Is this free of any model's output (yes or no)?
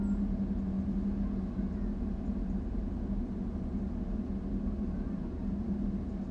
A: yes